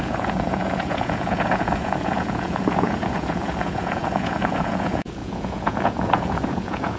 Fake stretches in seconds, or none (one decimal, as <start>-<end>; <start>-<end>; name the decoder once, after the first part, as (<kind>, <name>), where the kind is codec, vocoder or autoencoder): 0.0-7.0 (vocoder, Vocos)